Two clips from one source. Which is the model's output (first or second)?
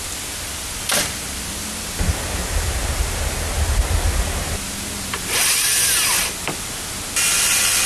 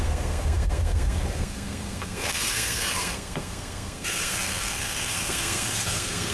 second